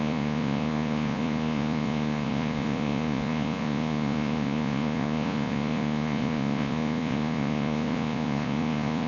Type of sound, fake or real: fake